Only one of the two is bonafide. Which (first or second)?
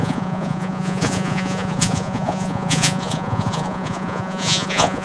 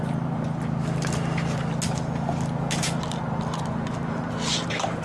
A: second